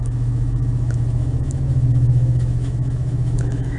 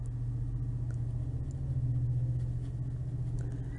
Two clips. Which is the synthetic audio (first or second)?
first